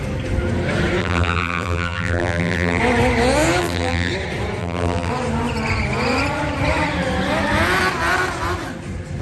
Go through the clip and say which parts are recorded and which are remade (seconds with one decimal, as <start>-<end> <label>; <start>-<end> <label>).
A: 0.0-1.0 recorded; 1.0-2.8 remade; 2.8-3.6 recorded; 3.6-4.1 remade; 4.1-4.6 recorded; 4.6-5.1 remade; 5.1-9.2 recorded